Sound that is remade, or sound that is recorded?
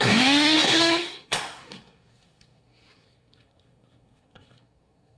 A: remade